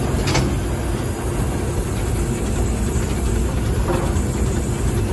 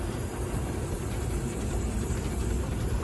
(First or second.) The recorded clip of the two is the first